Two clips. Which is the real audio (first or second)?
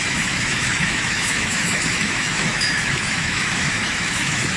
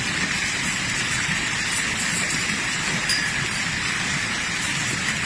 second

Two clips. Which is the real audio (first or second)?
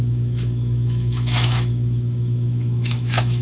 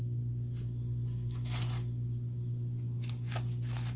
second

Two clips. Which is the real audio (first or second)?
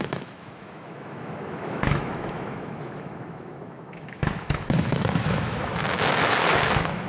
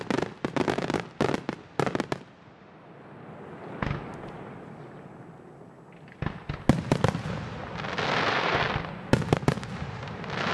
second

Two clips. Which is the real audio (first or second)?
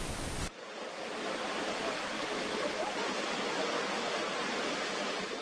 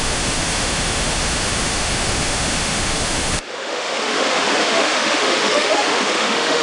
first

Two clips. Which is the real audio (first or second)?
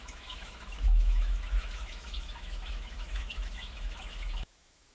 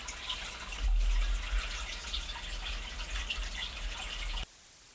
second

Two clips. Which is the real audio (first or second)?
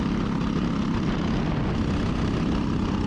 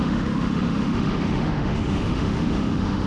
first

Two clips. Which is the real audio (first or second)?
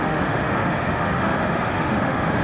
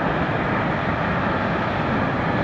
second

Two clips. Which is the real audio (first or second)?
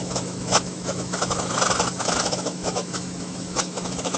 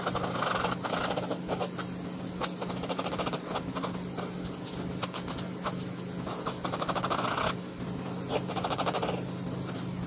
second